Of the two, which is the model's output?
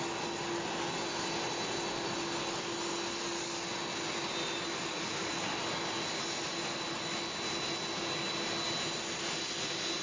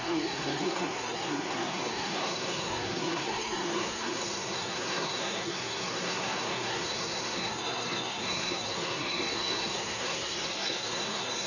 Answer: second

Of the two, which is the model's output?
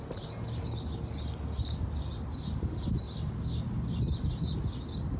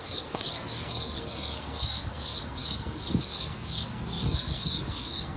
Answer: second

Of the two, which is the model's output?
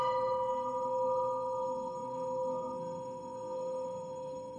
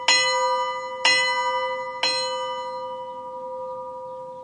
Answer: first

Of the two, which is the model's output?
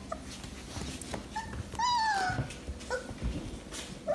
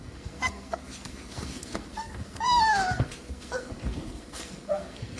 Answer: second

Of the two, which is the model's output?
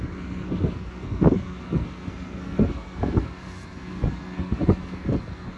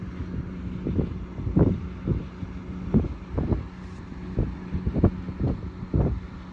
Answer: first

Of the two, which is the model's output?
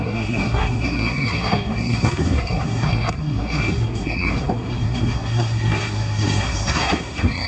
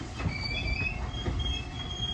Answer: first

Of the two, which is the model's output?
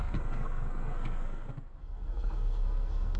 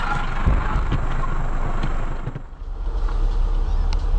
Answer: first